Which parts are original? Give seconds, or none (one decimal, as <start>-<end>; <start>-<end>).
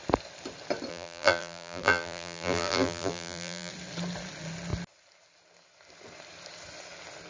0.0-0.9; 3.7-7.3